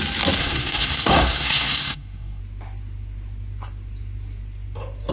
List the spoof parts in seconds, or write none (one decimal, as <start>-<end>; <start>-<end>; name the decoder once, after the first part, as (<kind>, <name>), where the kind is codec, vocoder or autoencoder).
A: 0.4-2.4 (codec, SNAC)